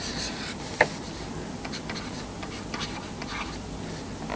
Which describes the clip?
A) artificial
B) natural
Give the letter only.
B